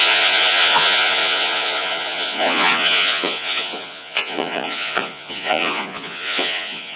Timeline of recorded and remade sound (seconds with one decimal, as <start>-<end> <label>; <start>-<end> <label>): 0.0-7.0 remade